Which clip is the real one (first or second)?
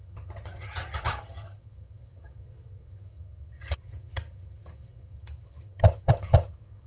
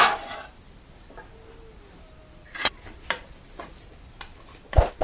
second